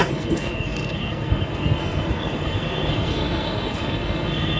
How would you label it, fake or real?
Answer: fake